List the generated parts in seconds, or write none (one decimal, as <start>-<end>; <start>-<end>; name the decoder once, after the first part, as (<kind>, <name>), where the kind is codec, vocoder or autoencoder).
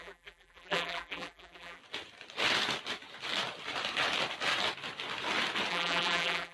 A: 0.0-1.8 (vocoder, BigVGAN v2); 5.7-6.5